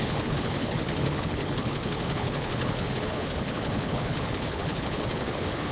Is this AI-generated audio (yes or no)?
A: yes